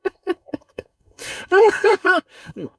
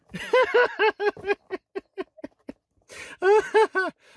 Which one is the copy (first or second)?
first